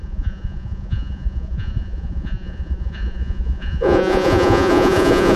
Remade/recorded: remade